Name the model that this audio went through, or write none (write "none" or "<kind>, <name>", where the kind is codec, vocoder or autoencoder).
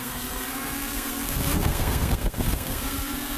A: codec, SNAC